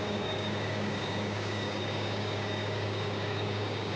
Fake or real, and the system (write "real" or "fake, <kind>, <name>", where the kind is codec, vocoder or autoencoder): fake, codec, DAC